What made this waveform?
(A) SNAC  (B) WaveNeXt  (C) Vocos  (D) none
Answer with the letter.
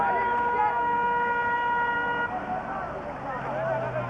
D